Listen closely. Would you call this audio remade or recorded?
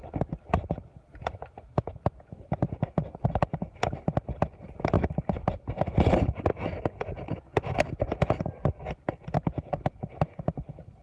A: recorded